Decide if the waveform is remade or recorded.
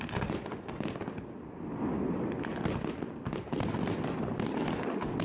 recorded